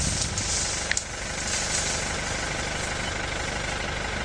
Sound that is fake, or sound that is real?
real